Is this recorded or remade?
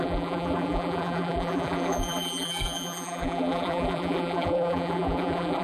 remade